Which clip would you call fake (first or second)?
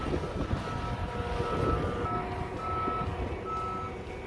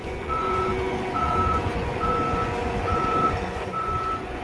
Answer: second